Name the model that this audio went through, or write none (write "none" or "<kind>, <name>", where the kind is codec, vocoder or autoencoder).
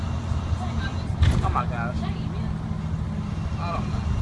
none